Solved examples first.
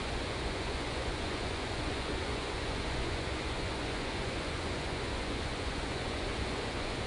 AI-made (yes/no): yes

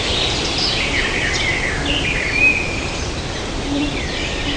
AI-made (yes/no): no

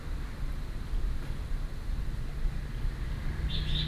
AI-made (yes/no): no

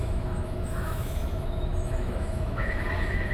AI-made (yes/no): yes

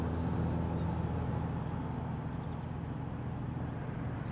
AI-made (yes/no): no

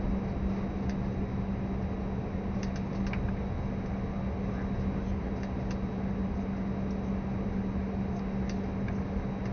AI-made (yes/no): no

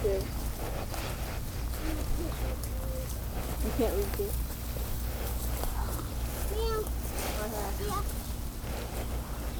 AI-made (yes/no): no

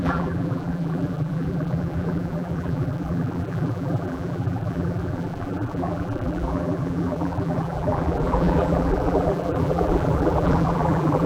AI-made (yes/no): yes